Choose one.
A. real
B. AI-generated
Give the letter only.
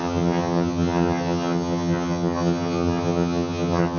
B